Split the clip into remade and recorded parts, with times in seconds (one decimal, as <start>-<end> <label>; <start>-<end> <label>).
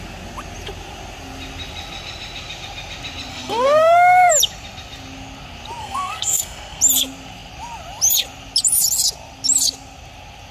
0.0-3.3 recorded; 3.3-4.3 remade; 4.3-5.8 recorded; 5.8-6.8 remade; 6.8-10.5 recorded